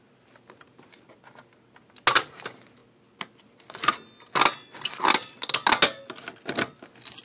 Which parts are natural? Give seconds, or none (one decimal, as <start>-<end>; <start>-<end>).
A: 0.0-7.2